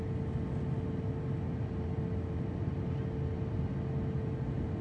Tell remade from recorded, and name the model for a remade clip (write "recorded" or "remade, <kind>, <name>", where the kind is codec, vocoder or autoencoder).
recorded